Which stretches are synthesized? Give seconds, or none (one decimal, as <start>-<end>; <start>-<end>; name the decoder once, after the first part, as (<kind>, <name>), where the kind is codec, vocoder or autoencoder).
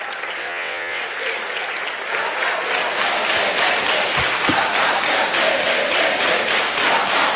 0.4-1.0 (vocoder, WaveNeXt)